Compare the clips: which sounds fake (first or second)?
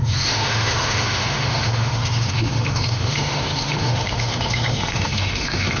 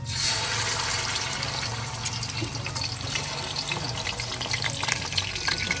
first